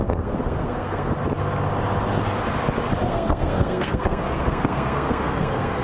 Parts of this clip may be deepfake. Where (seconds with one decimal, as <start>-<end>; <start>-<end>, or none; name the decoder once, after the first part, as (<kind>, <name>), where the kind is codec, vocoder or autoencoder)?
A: 0.0-1.2 (codec, SNAC); 3.1-5.8